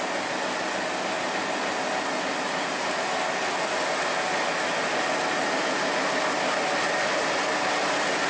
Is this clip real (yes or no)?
yes